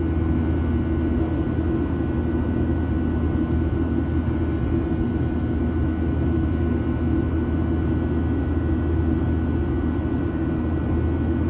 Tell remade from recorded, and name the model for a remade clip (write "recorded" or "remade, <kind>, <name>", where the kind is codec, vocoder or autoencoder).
recorded